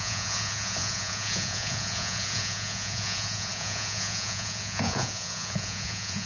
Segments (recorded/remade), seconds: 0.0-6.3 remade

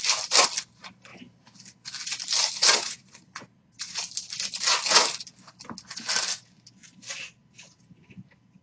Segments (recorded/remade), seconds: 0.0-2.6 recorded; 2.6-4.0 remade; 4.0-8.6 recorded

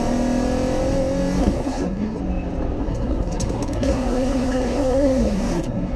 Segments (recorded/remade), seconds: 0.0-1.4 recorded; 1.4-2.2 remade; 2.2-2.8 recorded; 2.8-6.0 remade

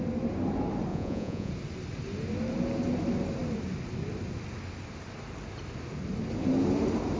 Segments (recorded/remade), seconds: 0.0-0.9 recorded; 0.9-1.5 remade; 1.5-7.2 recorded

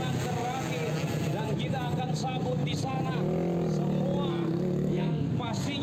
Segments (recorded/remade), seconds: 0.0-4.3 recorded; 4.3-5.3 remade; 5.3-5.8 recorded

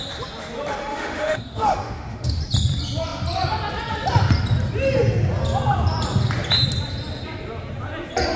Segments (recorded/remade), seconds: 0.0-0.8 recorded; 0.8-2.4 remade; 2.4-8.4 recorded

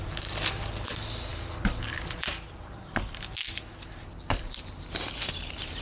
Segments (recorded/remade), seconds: 0.0-5.8 recorded

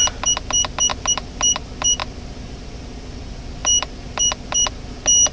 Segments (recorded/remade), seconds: 0.0-5.3 recorded